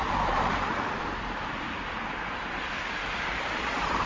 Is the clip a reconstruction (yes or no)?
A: no